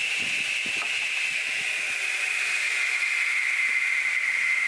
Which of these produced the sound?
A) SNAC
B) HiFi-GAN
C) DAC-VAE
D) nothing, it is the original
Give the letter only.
D